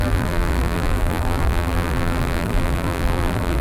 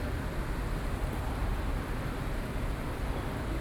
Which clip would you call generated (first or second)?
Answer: first